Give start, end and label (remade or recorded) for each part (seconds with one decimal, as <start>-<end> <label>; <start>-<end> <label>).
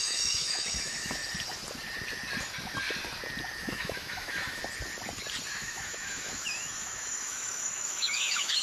0.0-1.2 remade; 1.2-3.6 recorded; 3.6-4.6 remade; 4.6-5.5 recorded; 5.5-8.6 remade